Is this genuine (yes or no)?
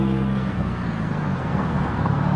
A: no